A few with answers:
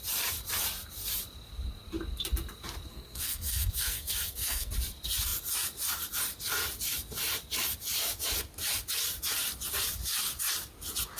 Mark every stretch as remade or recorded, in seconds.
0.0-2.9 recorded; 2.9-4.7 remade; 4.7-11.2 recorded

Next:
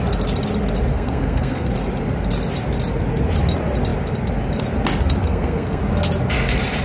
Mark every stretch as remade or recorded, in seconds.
0.0-0.9 recorded; 0.9-1.7 remade; 1.7-5.2 recorded; 5.2-5.8 remade; 5.8-6.8 recorded